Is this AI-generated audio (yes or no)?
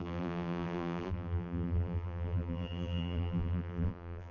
yes